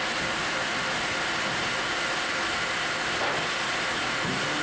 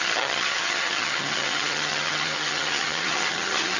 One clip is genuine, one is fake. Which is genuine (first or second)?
first